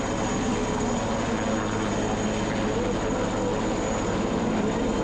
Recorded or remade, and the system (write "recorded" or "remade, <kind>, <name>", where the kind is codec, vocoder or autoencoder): recorded